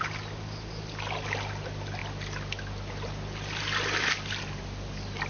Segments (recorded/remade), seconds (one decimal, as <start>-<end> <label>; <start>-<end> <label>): 0.0-5.3 recorded